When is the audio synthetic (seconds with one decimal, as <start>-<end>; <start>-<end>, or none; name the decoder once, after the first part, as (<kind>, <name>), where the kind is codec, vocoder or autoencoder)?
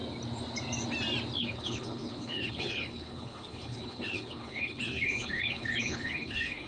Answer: 1.4-6.7 (codec, HILCodec)